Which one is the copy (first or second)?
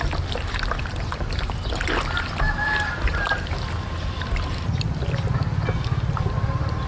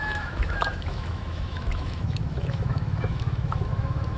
second